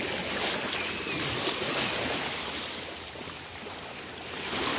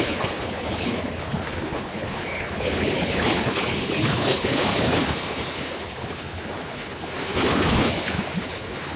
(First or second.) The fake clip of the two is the second